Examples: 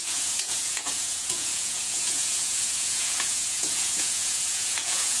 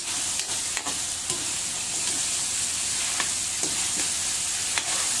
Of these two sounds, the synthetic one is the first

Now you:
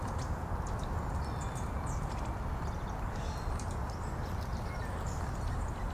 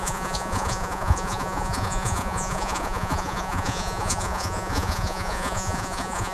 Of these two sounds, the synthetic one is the second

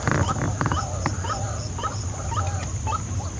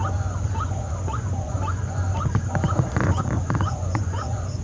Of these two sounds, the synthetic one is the second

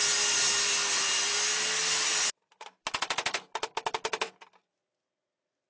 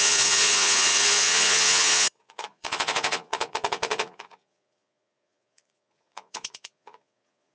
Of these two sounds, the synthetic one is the second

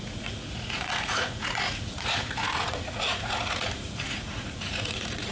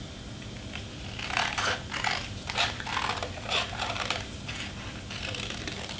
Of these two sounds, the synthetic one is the first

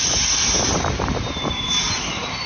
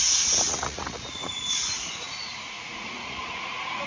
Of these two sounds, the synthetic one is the second